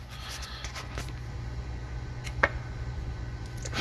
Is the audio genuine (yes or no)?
no